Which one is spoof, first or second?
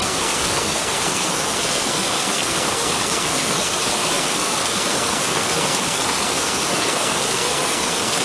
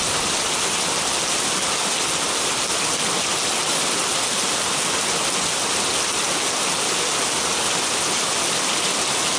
first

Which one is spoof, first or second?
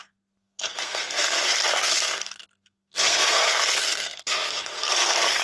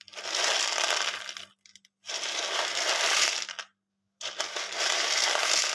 first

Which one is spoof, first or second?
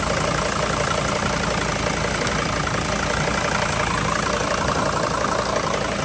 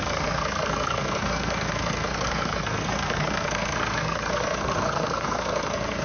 second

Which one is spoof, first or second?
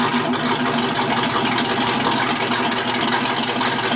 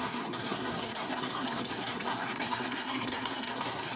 second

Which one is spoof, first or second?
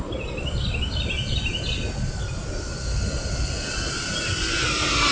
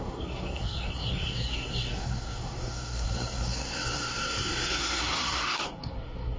second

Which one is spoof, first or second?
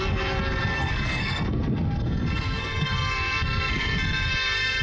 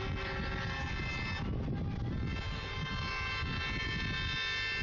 first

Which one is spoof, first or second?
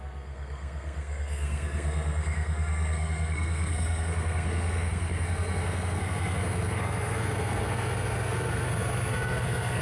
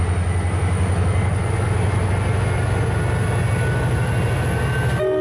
first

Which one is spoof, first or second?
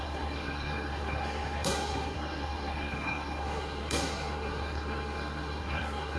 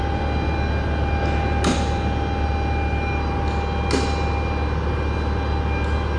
first